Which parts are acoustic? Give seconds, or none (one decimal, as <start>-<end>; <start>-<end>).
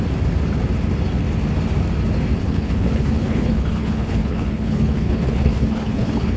0.0-2.4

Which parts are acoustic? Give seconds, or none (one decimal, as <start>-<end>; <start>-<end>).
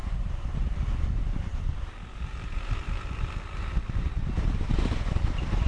none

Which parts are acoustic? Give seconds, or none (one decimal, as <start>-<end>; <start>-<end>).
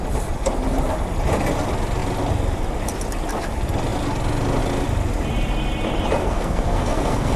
0.0-6.2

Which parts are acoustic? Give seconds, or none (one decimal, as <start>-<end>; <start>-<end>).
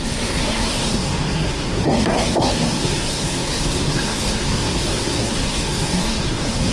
none